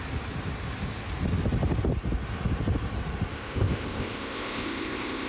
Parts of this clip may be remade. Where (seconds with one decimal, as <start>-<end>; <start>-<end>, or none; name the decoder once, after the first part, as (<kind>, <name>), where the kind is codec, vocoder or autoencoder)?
3.3-5.3 (codec, ZipCodec)